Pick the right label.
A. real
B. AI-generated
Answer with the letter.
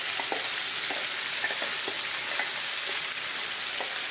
A